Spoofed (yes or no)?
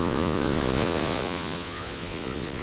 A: yes